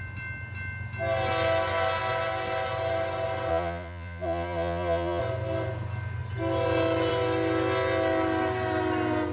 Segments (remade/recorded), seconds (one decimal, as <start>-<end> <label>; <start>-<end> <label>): 0.0-3.5 recorded; 3.5-5.2 remade; 5.2-9.3 recorded

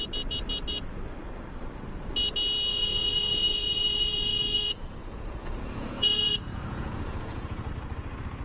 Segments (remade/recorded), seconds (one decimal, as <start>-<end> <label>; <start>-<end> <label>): 0.0-2.7 recorded; 2.7-7.7 remade; 7.7-8.4 recorded

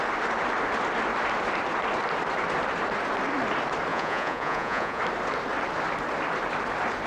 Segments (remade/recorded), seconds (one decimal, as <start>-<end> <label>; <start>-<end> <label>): 0.0-3.9 recorded; 3.9-5.0 remade; 5.0-7.1 recorded

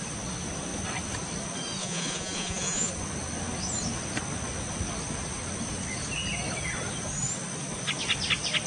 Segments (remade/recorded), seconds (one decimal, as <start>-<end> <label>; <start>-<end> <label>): 0.0-1.8 recorded; 1.8-2.9 remade; 2.9-8.7 recorded